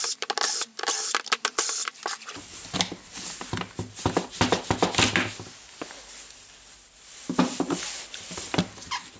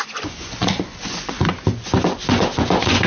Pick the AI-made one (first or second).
second